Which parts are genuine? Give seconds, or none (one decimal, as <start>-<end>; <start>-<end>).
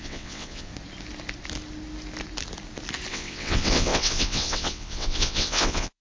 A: 0.7-3.1